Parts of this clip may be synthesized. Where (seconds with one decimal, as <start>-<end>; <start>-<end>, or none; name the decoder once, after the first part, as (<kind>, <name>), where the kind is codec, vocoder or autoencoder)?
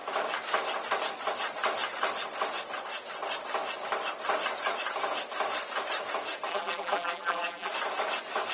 6.5-7.7 (vocoder, BigVGAN v2)